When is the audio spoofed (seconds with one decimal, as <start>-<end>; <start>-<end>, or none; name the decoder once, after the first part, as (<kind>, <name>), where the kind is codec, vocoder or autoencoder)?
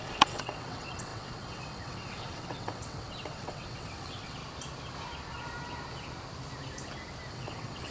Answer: 0.0-4.4 (vocoder, WaveNeXt); 7.3-7.9